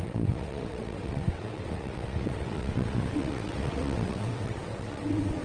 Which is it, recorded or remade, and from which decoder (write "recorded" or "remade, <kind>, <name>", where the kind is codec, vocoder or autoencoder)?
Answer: remade, vocoder, WaveNeXt